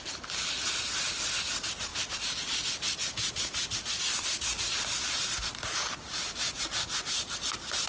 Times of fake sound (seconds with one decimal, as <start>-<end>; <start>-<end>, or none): none